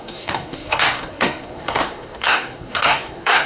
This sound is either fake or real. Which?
fake